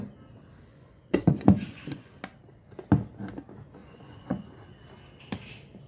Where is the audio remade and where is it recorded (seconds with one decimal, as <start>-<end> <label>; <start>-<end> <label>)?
0.0-0.7 recorded; 0.7-2.1 remade; 2.1-3.8 recorded; 3.8-4.5 remade; 4.5-5.9 recorded